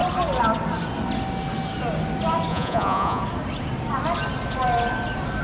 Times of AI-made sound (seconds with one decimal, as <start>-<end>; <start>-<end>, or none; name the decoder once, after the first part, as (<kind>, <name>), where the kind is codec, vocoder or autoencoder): 2.5-3.2 (vocoder, Vocos)

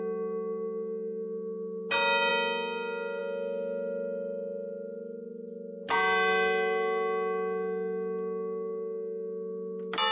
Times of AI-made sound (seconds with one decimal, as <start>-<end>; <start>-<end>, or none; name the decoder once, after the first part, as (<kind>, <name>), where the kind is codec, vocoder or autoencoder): none

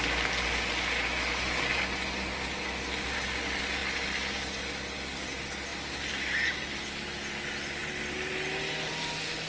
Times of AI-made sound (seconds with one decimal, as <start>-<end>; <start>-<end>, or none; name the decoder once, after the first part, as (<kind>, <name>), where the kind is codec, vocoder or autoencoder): none

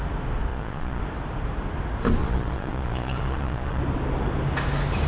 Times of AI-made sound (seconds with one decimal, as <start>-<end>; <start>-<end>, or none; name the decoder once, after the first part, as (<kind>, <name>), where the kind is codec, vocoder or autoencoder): 0.5-1.0 (vocoder, Vocos); 2.2-3.8

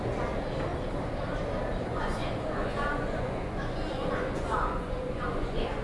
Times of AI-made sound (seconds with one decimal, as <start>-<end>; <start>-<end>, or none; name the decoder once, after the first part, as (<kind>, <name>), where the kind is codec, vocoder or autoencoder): 1.9-5.8 (vocoder, Vocos)

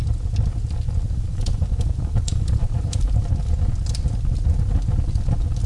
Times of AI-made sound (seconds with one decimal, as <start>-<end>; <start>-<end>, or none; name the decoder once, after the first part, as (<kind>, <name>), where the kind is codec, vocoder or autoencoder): 1.3-3.4 (vocoder, BigVGAN v2)